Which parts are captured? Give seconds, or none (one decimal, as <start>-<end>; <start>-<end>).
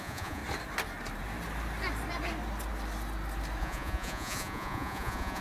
0.4-3.6